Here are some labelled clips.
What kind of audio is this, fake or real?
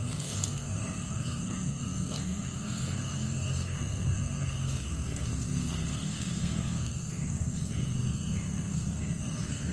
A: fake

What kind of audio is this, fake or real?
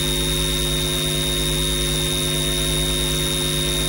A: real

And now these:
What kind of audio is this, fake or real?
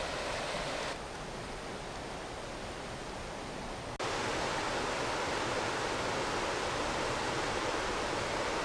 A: real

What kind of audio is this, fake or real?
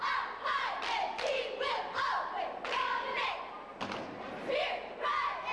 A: real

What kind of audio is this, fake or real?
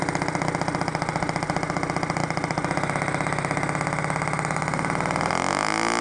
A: real